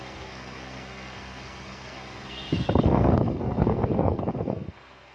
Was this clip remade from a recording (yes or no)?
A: yes